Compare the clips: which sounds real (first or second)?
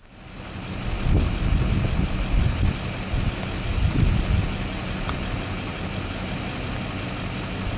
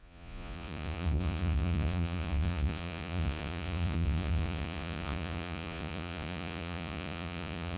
first